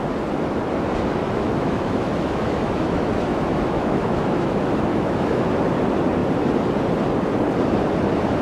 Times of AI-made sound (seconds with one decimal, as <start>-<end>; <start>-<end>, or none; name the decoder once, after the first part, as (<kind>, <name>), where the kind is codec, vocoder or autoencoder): 1.2-4.5 (autoencoder, DAC-VAE); 4.9-5.5